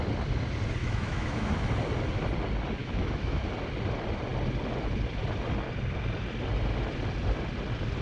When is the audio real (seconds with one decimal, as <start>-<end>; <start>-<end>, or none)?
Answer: 0.0-0.8; 1.7-2.8; 3.4-8.0